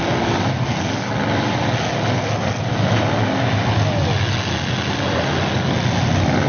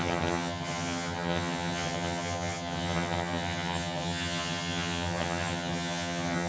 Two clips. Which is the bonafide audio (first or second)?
first